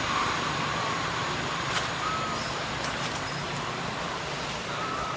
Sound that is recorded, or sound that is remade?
recorded